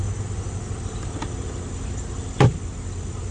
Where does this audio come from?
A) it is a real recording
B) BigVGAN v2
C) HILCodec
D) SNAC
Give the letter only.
A